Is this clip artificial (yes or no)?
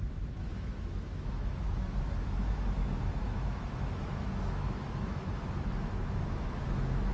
yes